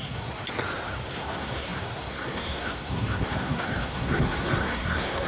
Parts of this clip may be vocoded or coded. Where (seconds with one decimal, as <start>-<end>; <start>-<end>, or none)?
0.0-0.4; 1.1-5.3